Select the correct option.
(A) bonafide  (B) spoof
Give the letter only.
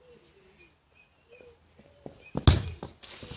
A